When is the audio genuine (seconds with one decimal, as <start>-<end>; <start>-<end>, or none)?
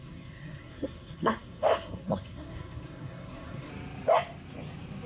3.7-5.1